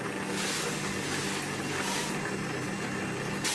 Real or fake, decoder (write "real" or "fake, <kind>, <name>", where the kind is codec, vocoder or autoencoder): real